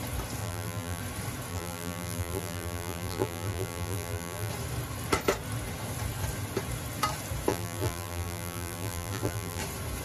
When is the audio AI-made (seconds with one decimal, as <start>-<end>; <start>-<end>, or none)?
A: 0.4-1.0; 1.5-4.5; 7.5-9.6